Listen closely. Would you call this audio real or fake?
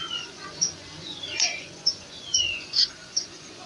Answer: fake